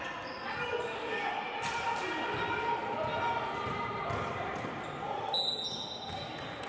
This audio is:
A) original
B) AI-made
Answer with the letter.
A